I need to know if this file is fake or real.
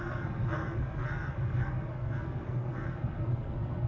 fake